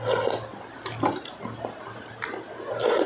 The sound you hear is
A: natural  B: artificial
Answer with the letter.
A